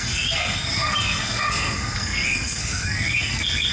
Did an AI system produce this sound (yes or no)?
yes